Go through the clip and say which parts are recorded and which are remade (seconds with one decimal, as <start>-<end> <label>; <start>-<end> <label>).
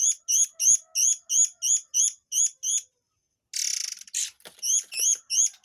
0.0-5.6 recorded